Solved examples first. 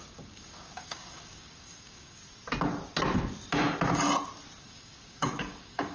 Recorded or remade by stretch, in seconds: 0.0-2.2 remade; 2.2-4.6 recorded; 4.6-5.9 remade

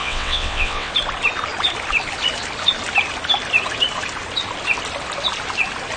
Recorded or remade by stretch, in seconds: 0.0-0.9 remade; 0.9-6.0 recorded

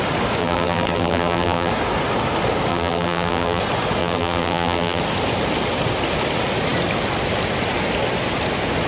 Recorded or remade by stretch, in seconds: 0.0-0.4 recorded; 0.4-1.7 remade; 1.7-2.7 recorded; 2.7-3.6 remade; 3.6-4.0 recorded; 4.0-5.0 remade; 5.0-8.9 recorded

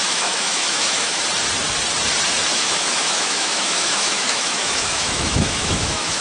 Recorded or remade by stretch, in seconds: 0.0-1.2 remade; 1.2-2.5 recorded; 2.5-6.2 remade

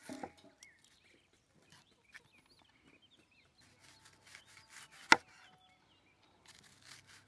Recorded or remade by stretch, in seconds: 0.0-7.3 recorded

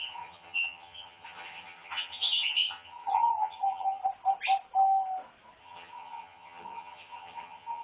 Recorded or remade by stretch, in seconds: 0.0-4.0 remade; 4.0-5.6 recorded; 5.6-7.8 remade